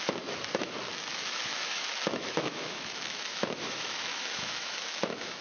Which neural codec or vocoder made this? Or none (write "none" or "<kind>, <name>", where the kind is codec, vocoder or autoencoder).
autoencoder, DAC-VAE